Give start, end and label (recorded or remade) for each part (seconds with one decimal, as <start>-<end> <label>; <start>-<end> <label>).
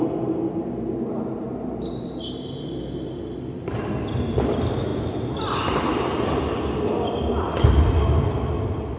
0.0-9.0 recorded